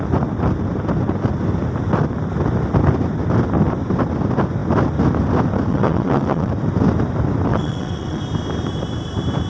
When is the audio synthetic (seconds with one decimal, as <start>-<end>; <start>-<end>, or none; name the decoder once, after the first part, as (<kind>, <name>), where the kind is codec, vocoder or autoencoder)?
5.7-6.5 (vocoder, WaveNeXt); 7.5-8.2